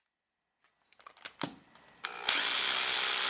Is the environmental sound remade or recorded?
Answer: recorded